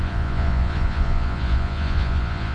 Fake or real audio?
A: fake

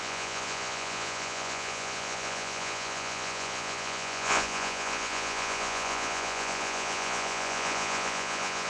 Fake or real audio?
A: fake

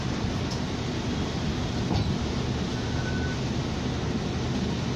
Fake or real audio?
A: real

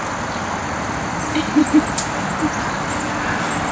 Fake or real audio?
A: real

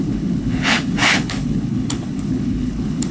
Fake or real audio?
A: fake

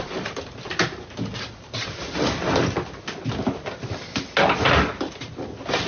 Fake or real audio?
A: real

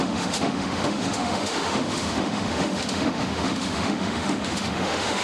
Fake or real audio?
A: fake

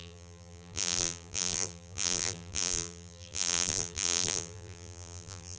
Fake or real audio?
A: fake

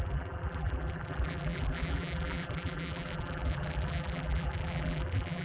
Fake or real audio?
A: fake